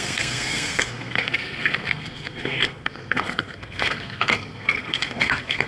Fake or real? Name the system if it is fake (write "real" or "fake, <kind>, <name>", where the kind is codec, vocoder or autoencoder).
fake, codec, SNAC